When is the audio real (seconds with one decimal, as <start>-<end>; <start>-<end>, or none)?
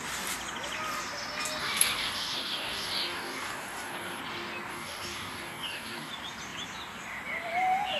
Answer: 0.0-1.6; 4.2-4.7; 6.1-8.0